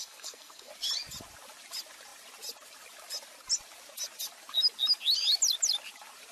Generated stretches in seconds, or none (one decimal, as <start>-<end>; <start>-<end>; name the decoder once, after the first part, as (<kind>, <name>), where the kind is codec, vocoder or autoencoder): 0.0-0.7 (codec, SNAC)